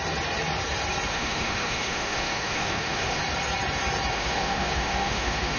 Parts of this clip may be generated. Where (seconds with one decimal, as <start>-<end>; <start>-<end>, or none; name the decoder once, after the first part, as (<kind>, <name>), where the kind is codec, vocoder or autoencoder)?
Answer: 1.1-3.2 (autoencoder, DAC-VAE); 4.1-5.6